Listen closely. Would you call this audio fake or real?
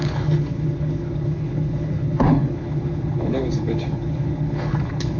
fake